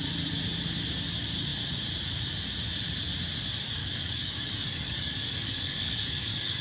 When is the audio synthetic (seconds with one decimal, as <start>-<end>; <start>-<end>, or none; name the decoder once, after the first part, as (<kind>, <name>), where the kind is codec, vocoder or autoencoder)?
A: 3.8-6.6 (codec, DAC)